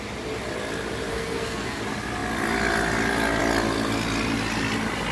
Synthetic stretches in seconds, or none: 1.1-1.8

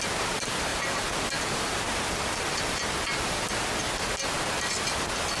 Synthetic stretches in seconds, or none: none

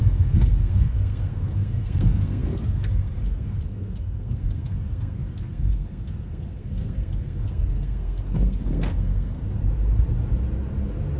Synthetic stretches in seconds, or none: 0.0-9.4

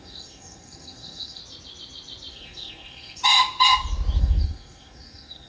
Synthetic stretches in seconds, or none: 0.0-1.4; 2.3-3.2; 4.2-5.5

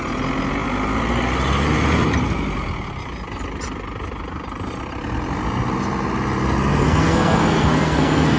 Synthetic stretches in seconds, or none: 6.8-8.4

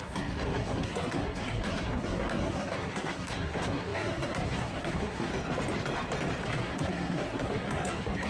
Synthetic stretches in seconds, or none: 0.0-5.3; 6.4-8.3